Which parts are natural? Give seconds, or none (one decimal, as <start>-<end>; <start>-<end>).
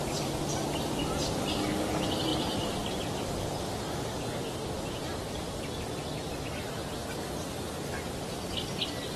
0.0-2.3; 7.3-9.2